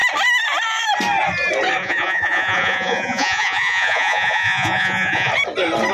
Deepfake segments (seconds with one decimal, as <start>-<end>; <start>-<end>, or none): 1.8-5.3